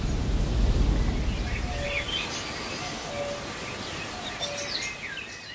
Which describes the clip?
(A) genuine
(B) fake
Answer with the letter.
A